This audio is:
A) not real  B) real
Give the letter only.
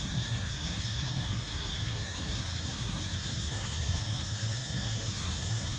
A